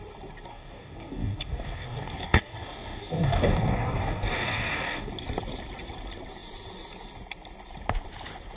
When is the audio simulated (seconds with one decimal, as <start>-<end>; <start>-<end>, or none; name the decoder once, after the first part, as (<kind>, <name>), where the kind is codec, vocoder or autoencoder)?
0.5-5.1 (codec, DAC)